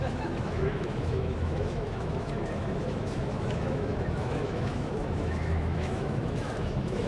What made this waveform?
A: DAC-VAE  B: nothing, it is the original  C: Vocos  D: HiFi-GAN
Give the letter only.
A